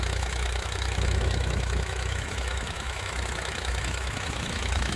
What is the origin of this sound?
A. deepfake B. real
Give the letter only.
A